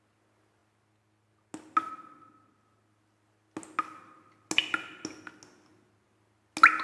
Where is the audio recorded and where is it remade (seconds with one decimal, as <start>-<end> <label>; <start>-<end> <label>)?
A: 0.0-6.8 recorded